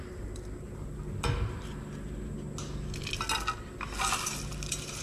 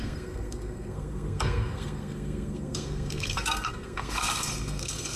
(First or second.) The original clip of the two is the first